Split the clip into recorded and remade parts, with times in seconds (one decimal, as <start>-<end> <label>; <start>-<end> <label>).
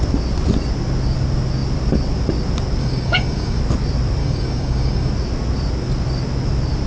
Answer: 0.0-2.8 recorded; 2.8-3.6 remade; 3.6-4.2 recorded; 4.2-5.1 remade; 5.1-6.9 recorded